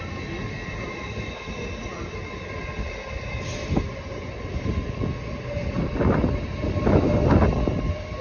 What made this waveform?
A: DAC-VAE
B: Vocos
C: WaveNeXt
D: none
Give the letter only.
D